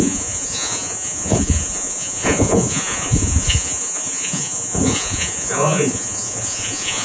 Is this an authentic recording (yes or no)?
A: no